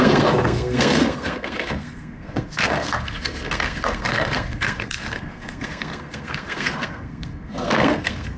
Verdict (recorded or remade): remade